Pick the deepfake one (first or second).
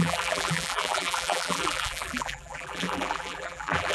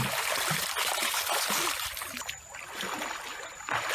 first